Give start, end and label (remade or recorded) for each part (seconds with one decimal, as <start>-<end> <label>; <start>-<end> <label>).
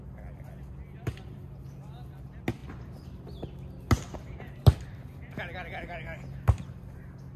0.0-7.4 recorded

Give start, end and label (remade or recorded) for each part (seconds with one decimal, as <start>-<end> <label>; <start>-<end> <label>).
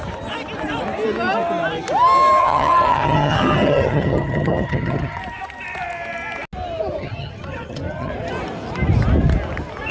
0.0-2.4 recorded; 2.4-5.2 remade; 5.2-7.0 recorded; 7.0-8.1 remade; 8.1-9.9 recorded